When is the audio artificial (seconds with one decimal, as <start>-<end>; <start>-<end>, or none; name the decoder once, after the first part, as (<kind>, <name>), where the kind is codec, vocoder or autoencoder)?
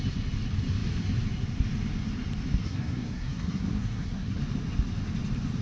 2.6-4.4 (codec, SNAC)